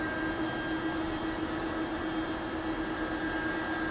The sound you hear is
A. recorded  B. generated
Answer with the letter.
A